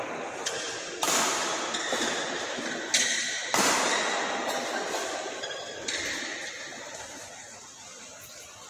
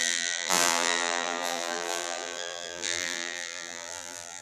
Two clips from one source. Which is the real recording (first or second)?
first